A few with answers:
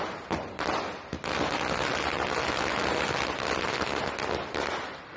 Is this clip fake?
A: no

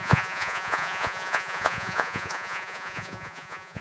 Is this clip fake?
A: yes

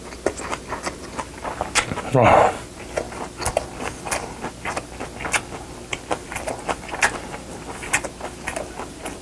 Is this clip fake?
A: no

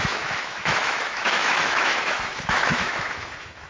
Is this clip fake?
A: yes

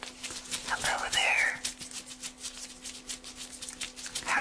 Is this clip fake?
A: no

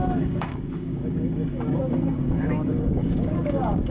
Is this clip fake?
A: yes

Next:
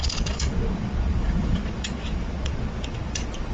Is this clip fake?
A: yes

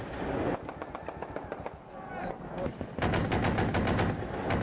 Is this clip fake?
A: no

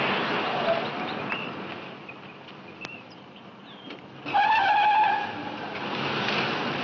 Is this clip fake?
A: no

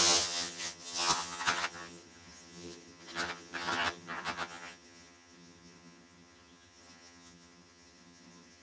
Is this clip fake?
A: yes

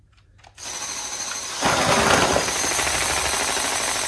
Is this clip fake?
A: no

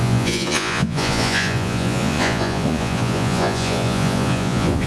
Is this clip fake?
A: yes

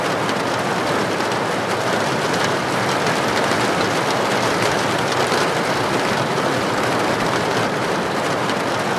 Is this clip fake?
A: yes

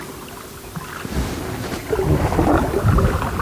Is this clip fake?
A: no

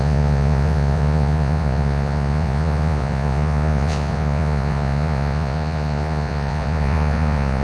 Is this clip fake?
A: yes